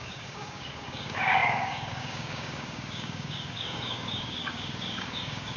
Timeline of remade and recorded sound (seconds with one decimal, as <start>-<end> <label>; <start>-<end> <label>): 0.0-5.6 remade